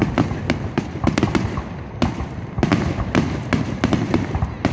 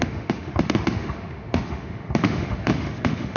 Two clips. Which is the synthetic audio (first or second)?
second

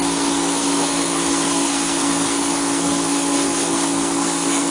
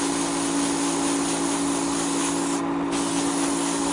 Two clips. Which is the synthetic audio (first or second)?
first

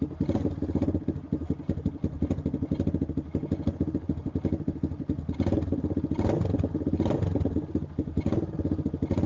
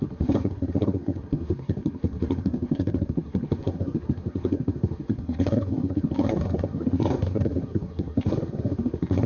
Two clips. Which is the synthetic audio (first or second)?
second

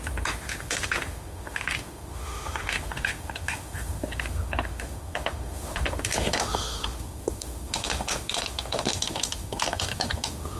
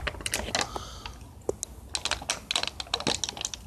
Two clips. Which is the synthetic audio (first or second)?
first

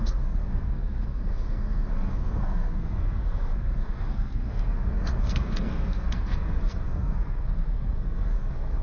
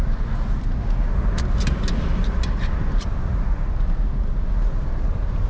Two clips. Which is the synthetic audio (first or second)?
first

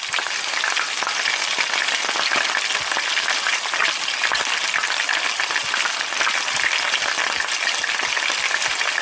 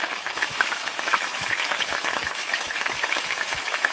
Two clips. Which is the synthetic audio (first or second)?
second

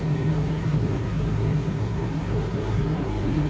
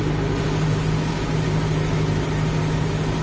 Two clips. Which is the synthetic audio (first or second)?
first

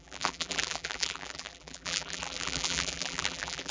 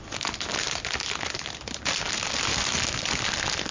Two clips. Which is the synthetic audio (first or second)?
first